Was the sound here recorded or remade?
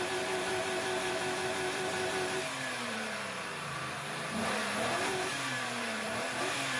remade